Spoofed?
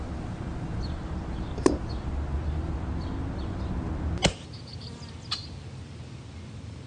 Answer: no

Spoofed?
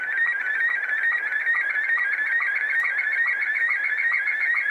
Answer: yes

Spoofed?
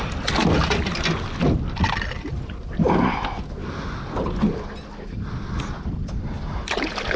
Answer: no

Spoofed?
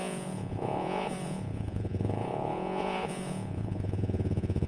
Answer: yes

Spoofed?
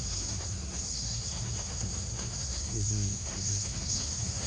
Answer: yes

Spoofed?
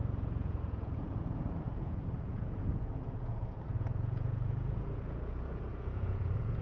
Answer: yes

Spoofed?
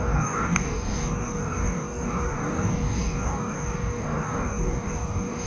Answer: yes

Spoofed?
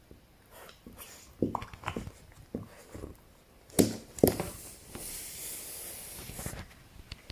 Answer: no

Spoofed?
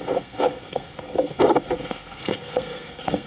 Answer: yes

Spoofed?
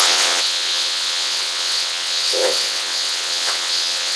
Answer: yes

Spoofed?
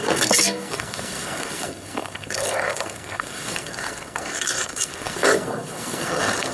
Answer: yes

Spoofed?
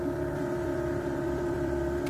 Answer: yes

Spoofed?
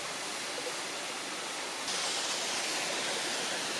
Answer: no